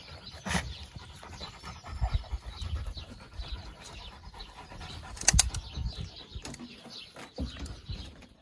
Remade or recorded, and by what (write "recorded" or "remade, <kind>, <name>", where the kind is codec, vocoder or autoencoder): recorded